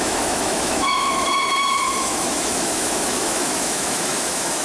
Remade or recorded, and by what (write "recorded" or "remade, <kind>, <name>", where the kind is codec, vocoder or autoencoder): remade, autoencoder, DAC-VAE